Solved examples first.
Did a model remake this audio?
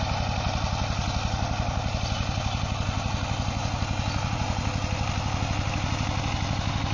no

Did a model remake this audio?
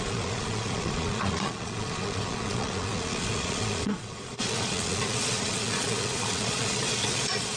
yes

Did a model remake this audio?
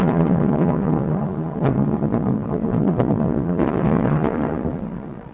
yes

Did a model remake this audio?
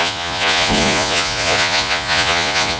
yes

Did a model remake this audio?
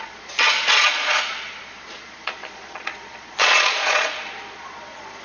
yes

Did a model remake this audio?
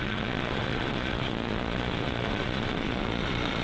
yes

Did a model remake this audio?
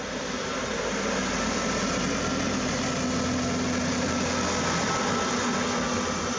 no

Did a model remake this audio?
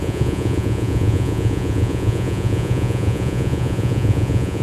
yes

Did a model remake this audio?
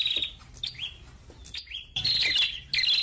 no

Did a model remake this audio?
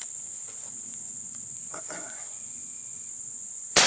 yes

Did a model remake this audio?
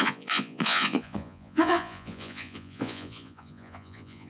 yes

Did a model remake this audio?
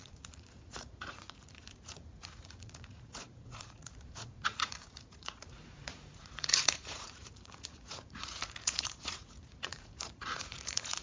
yes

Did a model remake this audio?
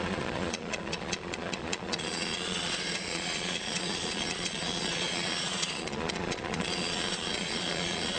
yes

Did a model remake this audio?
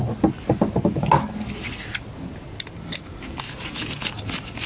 no